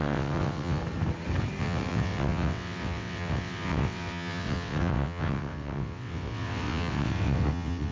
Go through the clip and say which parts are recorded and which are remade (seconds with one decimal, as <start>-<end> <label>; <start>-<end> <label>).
0.0-0.8 remade; 0.8-1.6 recorded; 1.6-7.9 remade